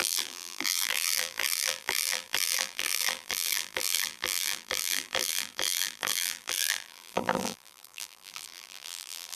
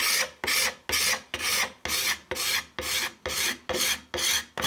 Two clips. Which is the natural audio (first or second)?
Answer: second